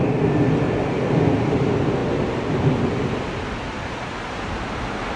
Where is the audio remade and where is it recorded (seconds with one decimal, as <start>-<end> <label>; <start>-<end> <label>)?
0.0-5.2 recorded